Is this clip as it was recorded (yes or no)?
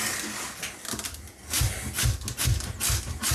yes